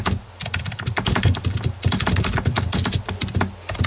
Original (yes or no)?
yes